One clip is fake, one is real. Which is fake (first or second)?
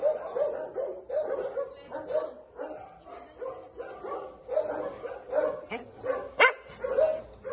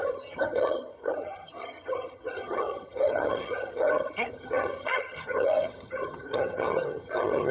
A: second